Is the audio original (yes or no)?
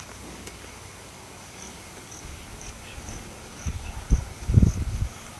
no